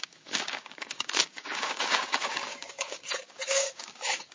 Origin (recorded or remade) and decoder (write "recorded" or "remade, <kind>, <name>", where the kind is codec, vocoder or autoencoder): remade, codec, DAC